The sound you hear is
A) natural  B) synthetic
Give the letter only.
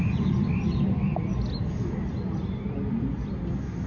A